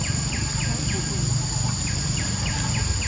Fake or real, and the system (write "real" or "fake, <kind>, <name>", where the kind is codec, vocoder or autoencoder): real